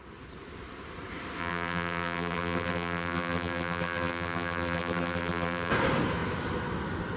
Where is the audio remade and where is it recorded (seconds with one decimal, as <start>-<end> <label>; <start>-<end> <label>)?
0.0-1.4 recorded; 1.4-5.7 remade; 5.7-7.2 recorded